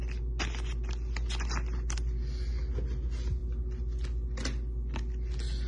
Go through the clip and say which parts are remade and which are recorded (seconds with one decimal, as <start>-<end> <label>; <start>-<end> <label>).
0.0-5.7 recorded